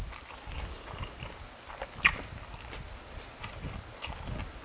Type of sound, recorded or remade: recorded